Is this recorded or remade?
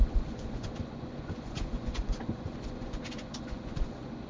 remade